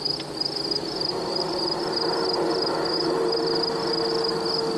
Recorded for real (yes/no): yes